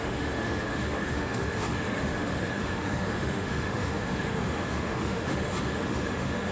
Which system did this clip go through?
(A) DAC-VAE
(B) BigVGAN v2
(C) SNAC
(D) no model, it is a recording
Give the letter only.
A